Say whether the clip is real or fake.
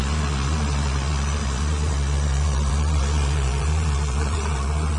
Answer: fake